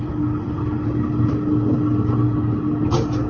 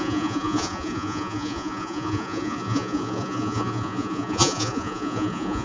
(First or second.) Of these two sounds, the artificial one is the second